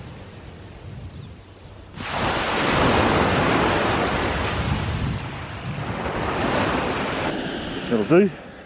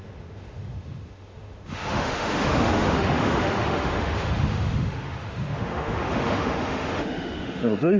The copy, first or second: second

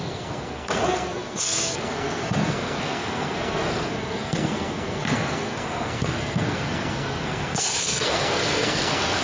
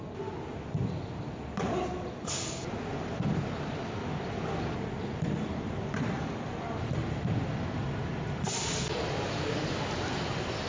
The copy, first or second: first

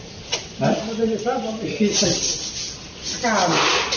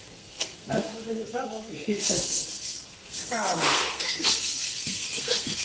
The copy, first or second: second